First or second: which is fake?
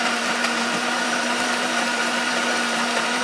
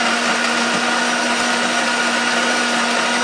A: first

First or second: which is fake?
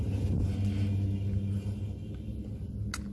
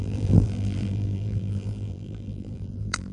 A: second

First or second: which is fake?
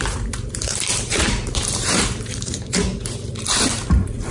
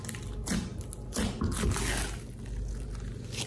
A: first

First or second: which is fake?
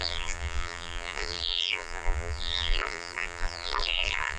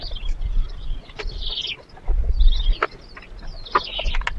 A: first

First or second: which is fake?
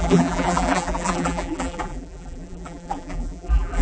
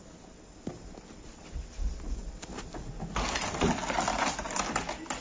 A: first